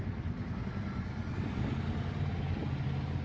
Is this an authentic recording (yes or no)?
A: yes